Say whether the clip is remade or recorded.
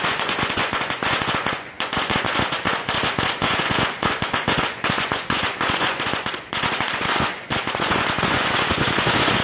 remade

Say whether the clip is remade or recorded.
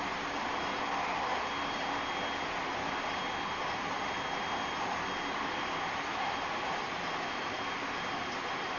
recorded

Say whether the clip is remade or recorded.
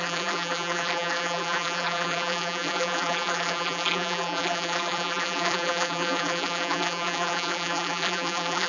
remade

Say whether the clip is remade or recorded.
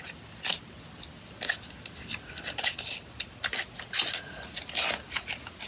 recorded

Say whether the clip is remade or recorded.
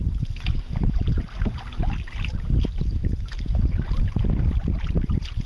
recorded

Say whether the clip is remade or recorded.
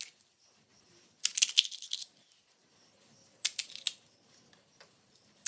recorded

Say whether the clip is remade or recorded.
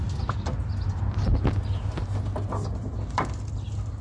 recorded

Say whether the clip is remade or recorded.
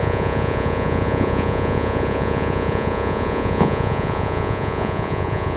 remade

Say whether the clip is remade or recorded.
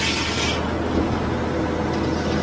recorded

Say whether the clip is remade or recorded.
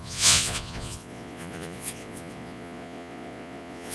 remade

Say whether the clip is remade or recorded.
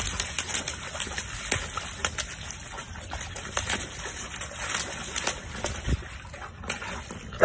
recorded